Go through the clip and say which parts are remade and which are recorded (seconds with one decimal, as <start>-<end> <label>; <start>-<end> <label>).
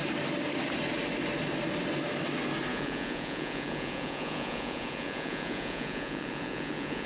0.0-2.7 recorded; 2.7-7.1 remade